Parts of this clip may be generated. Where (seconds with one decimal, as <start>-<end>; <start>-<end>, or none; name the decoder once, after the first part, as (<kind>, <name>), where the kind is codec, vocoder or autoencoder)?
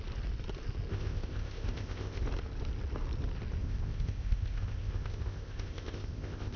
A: 0.9-2.2 (codec, ZipCodec); 3.6-6.6